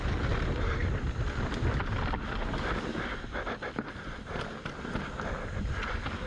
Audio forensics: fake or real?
real